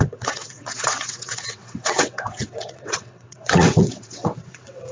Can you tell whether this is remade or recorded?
remade